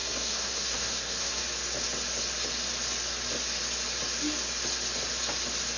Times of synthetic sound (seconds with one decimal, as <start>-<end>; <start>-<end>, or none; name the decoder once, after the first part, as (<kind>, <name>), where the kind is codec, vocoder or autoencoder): 0.0-1.4 (codec, SNAC)